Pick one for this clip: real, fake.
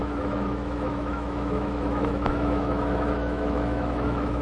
fake